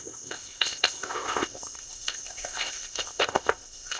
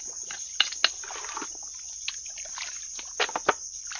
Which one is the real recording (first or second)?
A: second